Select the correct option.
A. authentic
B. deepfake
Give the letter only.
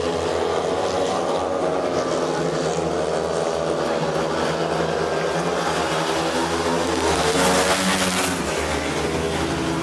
A